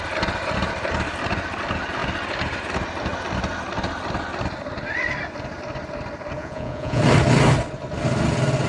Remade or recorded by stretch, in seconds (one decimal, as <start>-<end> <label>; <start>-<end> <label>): 0.0-6.4 recorded; 6.4-7.0 remade; 7.0-8.7 recorded